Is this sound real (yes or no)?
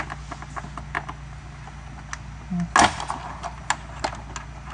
yes